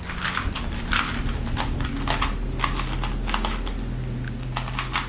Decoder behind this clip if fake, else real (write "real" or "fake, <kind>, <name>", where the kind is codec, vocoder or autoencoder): real